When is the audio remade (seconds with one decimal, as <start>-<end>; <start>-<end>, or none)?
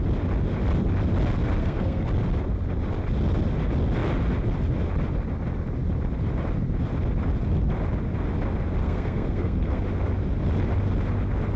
1.6-2.1; 8.8-9.8